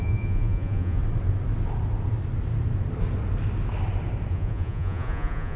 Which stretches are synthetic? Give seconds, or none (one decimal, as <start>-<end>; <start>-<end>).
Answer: 0.0-1.0; 4.3-5.6